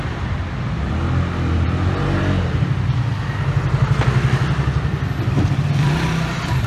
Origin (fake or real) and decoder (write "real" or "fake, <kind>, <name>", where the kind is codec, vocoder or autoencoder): real